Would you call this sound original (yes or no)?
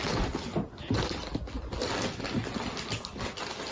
yes